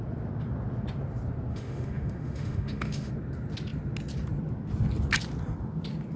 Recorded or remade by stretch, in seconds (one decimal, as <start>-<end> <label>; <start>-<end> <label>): 0.0-1.5 recorded; 1.5-3.1 remade; 3.1-6.2 recorded